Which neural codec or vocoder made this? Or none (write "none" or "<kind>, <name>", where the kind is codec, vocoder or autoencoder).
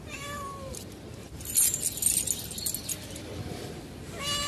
none